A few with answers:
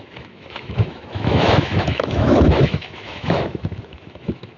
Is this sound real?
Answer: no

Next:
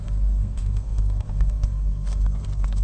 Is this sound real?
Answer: no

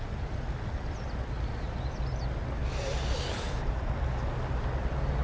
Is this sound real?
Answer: yes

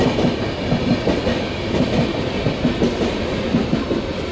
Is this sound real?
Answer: yes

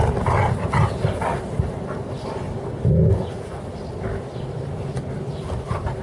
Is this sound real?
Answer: yes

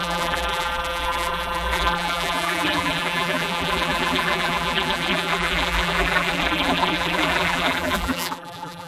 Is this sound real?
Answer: no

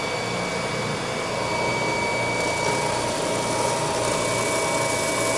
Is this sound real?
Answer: yes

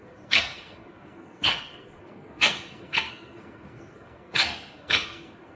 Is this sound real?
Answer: no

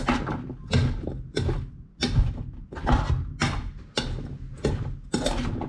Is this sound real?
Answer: yes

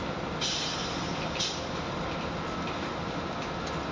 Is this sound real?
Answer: yes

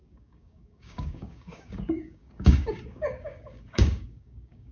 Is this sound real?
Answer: no